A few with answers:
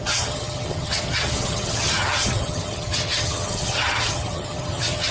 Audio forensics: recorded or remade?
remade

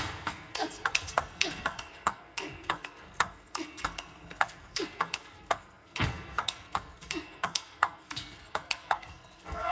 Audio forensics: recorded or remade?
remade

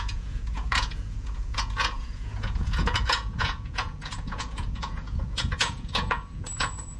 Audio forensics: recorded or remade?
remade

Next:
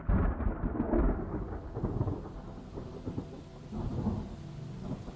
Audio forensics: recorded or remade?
recorded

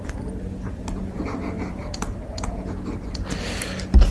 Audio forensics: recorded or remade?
recorded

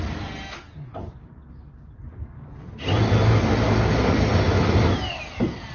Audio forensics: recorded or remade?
recorded